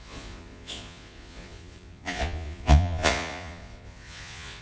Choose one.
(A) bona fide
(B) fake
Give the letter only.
B